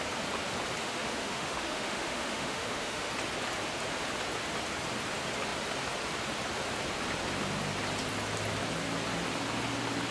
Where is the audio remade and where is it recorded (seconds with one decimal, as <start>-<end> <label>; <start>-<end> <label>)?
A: 0.0-0.8 recorded; 0.8-3.1 remade; 3.1-10.1 recorded